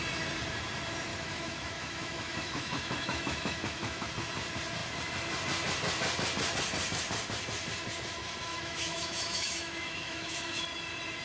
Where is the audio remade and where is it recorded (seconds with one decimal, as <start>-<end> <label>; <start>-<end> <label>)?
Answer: 0.0-1.1 recorded; 1.1-4.1 remade; 4.1-8.5 recorded; 8.5-10.6 remade; 10.6-11.2 recorded